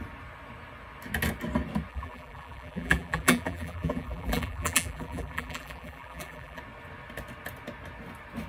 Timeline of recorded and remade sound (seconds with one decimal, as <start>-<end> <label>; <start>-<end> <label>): 0.0-1.9 recorded; 1.9-6.6 remade; 6.6-8.5 recorded